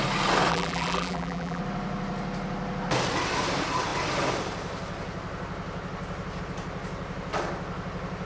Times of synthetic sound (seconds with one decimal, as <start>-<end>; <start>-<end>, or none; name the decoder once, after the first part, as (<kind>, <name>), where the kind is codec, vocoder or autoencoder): 0.5-1.6 (vocoder, BigVGAN v2)